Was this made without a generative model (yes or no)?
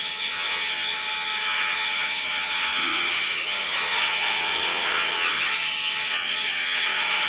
no